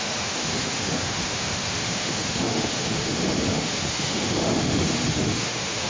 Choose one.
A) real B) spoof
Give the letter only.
B